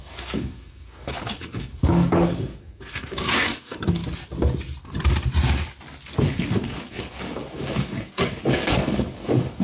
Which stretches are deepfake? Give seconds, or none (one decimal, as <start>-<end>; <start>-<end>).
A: 0.0-4.0; 6.2-9.6